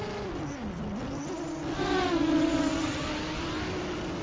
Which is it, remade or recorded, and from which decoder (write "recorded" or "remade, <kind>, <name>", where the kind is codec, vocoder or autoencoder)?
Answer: recorded